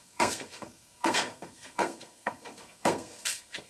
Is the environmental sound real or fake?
fake